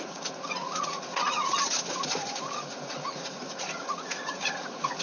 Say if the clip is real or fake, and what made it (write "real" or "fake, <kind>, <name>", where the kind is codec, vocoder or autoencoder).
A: fake, vocoder, Vocos